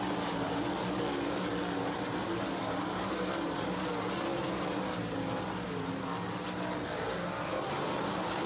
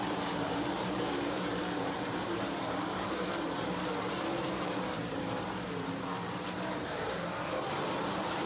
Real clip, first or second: first